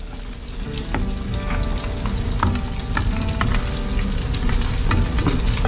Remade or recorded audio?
recorded